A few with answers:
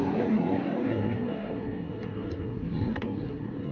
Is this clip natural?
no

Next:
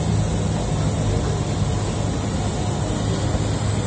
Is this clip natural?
yes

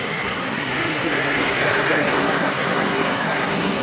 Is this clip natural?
no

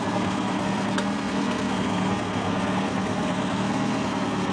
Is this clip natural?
no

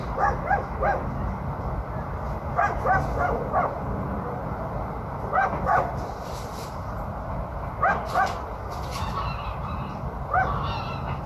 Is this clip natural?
yes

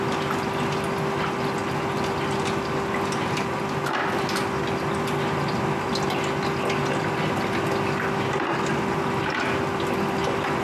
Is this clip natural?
yes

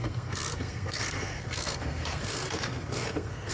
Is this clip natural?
no